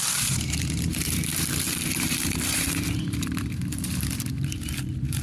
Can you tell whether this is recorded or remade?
remade